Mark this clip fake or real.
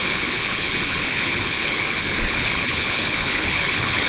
fake